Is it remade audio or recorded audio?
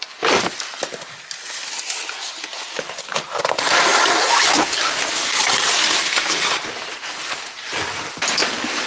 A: recorded